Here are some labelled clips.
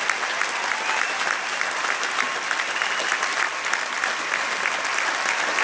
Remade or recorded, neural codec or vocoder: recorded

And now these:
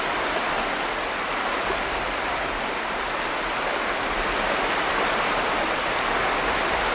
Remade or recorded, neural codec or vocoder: remade, vocoder, BigVGAN v2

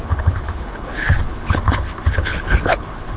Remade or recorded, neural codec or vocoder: remade, codec, HILCodec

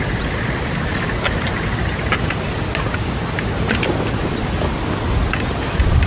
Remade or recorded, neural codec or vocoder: recorded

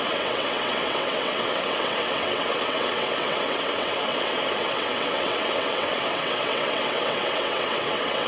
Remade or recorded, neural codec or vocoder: remade, vocoder, WaveNeXt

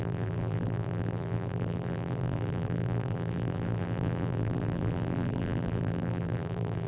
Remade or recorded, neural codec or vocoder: remade, vocoder, BigVGAN v2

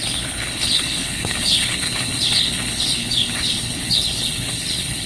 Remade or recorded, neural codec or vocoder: remade, codec, HILCodec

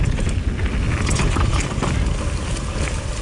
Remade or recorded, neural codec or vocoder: recorded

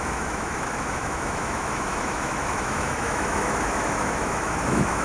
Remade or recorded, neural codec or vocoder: remade, autoencoder, DAC-VAE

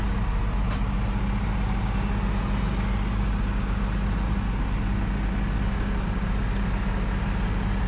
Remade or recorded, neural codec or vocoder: recorded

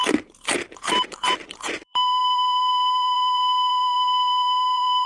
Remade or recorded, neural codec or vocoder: remade, vocoder, BigVGAN v2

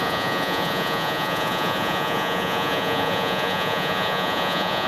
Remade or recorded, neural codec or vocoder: remade, vocoder, Vocos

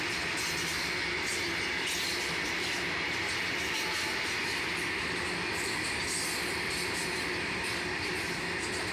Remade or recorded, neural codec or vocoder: recorded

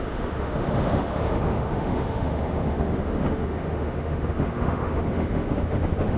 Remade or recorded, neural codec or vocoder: remade, autoencoder, DAC-VAE